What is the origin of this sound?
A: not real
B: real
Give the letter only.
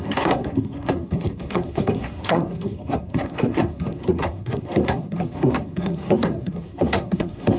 A